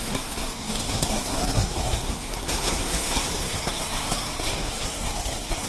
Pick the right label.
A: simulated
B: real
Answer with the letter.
A